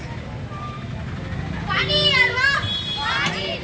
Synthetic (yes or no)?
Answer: no